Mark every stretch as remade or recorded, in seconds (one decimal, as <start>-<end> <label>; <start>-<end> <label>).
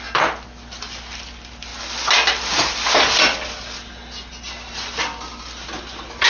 0.0-6.3 recorded